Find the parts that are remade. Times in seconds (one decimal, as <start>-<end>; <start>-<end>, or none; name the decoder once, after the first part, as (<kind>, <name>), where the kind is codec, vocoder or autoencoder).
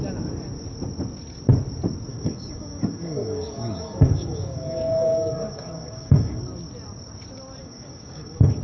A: 2.1-6.4 (codec, DAC); 7.6-8.6